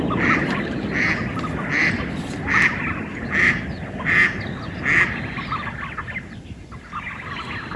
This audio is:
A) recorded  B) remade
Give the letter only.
A